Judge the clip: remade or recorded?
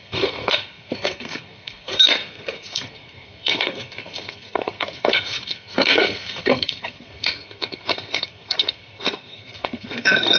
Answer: remade